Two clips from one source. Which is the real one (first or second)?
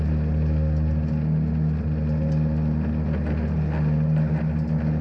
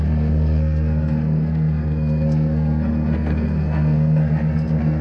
first